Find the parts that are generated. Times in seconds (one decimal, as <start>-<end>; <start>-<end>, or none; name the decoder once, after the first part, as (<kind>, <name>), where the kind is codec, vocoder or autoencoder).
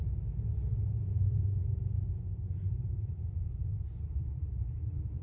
0.0-1.6 (vocoder, BigVGAN v2); 2.6-5.2